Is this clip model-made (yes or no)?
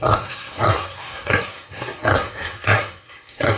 yes